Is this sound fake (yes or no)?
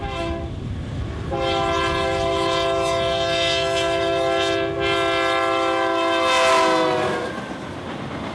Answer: no